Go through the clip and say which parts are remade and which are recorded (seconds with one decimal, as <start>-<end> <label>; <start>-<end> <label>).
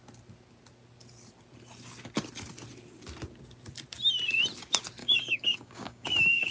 0.0-5.0 recorded; 5.0-6.5 remade